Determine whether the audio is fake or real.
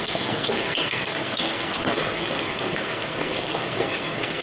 fake